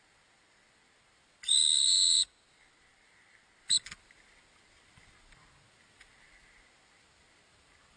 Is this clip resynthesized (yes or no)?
no